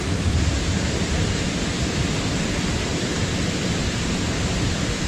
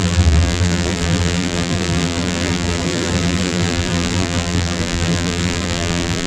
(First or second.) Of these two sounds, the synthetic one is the second